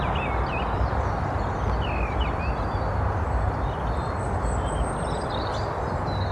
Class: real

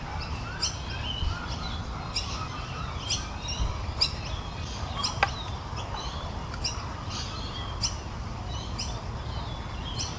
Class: real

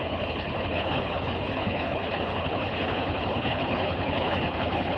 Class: fake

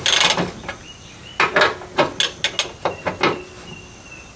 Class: real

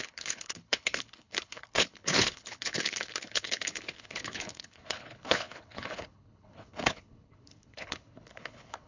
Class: fake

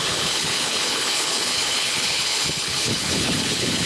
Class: fake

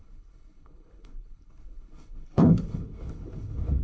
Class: fake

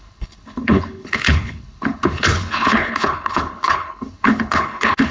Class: fake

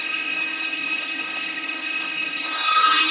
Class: fake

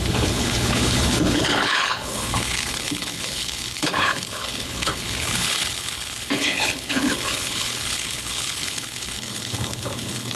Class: fake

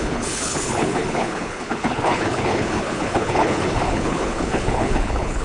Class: fake